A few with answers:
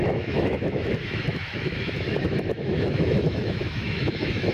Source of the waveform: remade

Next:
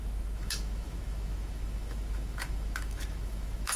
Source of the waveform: remade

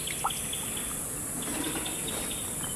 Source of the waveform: recorded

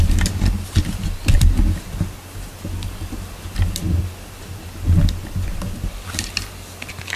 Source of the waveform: recorded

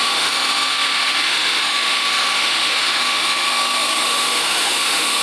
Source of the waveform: remade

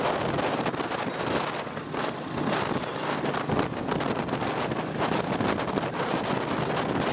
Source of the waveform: recorded